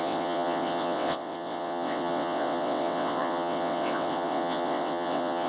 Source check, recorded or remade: remade